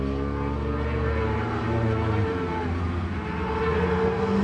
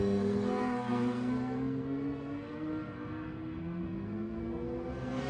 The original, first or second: first